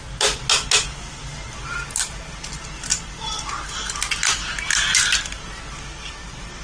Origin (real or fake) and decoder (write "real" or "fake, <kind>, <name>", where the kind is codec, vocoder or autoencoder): real